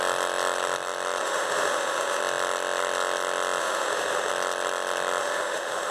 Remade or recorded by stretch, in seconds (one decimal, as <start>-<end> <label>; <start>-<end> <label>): 0.0-1.2 recorded; 1.2-2.2 remade; 2.2-3.6 recorded; 3.6-4.3 remade; 4.3-5.2 recorded; 5.2-5.9 remade